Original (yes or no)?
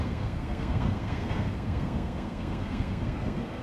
no